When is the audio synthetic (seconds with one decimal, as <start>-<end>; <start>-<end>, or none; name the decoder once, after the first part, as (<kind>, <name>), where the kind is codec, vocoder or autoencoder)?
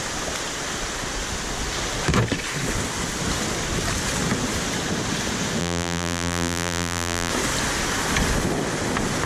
5.6-7.3 (vocoder, BigVGAN v2)